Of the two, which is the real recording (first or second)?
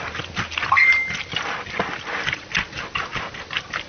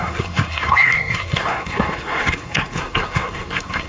first